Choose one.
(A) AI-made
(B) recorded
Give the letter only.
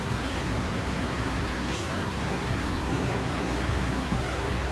A